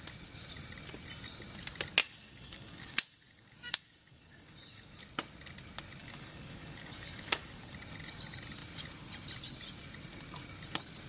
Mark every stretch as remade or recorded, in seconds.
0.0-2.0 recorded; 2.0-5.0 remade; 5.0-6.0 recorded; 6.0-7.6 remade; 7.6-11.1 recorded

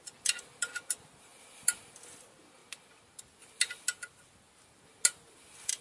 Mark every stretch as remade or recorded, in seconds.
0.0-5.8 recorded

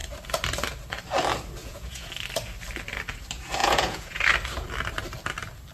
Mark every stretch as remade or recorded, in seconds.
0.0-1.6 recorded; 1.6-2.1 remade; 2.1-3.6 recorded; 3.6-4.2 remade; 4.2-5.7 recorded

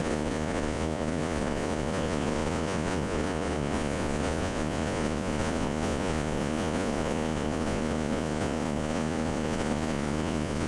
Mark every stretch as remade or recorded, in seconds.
0.0-10.7 remade